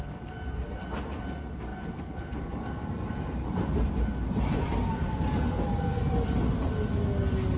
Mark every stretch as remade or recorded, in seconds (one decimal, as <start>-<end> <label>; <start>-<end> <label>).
0.0-1.7 recorded; 1.7-5.2 remade; 5.2-7.6 recorded